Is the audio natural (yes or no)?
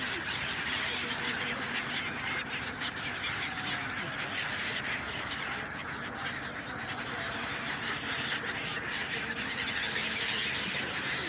yes